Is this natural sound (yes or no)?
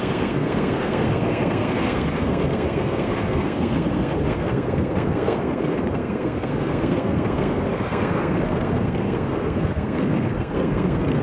no